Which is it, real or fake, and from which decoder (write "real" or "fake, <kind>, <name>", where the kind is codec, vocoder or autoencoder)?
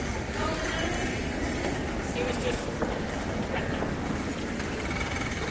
real